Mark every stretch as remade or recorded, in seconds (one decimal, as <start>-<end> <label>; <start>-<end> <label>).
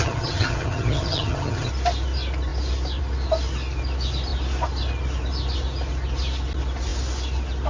0.0-1.7 remade; 1.7-7.7 recorded